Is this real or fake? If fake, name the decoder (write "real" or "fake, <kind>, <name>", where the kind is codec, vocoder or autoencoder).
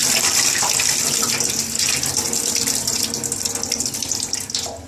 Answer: fake, vocoder, BigVGAN v2